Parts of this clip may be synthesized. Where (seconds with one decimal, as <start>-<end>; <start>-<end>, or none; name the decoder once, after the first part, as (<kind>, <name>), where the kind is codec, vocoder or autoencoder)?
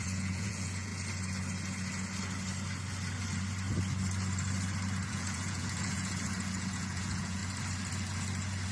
0.0-0.9 (vocoder, Vocos); 5.1-7.4